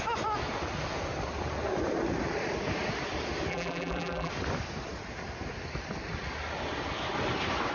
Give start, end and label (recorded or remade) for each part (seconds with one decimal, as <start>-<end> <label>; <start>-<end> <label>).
0.0-3.5 recorded; 3.5-4.3 remade; 4.3-7.7 recorded